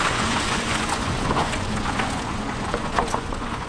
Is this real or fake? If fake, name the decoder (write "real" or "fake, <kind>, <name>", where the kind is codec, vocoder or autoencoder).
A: fake, vocoder, Vocos